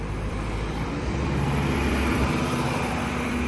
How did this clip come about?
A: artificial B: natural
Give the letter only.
A